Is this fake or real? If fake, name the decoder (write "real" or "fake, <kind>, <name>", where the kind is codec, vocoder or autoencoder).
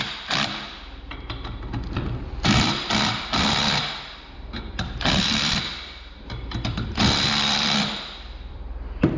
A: fake, vocoder, BigVGAN v2